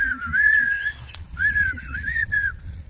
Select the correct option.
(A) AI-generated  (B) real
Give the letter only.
A